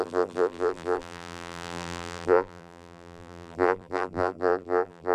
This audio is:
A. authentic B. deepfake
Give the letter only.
B